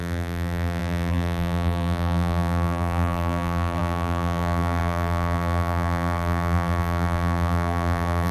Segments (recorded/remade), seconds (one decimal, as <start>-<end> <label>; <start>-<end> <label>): 0.0-8.3 remade